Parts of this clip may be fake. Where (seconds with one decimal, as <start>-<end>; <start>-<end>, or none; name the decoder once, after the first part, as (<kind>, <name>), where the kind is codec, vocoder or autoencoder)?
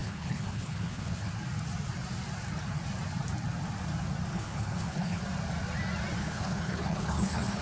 0.0-1.3 (codec, HILCodec); 4.3-5.2; 6.2-7.6